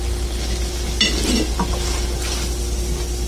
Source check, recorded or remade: recorded